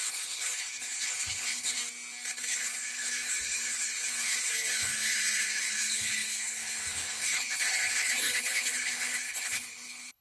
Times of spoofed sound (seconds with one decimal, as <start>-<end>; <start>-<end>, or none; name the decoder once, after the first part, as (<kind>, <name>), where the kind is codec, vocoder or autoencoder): 0.0-1.8 (codec, HILCodec); 2.3-10.2